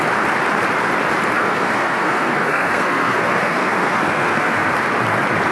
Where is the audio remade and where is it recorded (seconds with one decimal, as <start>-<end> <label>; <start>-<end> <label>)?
0.0-1.4 recorded; 1.4-4.7 remade; 4.7-5.5 recorded

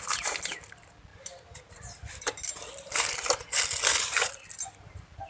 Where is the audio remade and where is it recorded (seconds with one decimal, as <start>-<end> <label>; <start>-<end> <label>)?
0.0-5.3 recorded

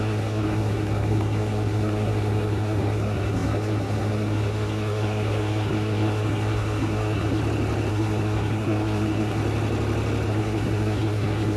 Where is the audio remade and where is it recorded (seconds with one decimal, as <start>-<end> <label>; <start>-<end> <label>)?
0.0-7.4 remade; 7.4-7.9 recorded; 7.9-9.4 remade; 9.4-10.3 recorded; 10.3-11.6 remade

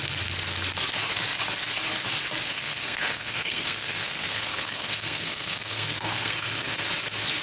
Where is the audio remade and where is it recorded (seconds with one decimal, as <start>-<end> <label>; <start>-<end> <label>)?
0.0-2.5 recorded; 2.5-6.8 remade; 6.8-7.4 recorded

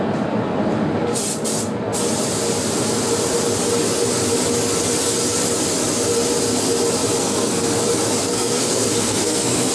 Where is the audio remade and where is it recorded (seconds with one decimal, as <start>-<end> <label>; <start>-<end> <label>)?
0.0-7.2 recorded; 7.2-7.8 remade; 7.8-8.2 recorded; 8.2-9.7 remade

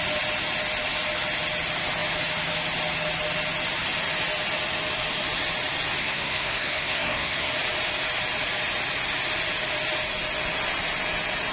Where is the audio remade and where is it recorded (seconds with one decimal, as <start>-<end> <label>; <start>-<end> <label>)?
0.0-6.0 recorded; 6.0-7.5 remade; 7.5-11.5 recorded

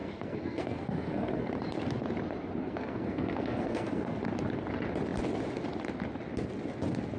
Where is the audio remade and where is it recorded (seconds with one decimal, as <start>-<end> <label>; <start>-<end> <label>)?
0.0-1.5 remade; 1.5-2.6 recorded; 2.6-4.2 remade; 4.2-7.2 recorded